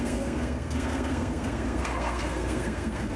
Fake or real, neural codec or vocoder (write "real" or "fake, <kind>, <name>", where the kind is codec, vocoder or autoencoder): fake, codec, SNAC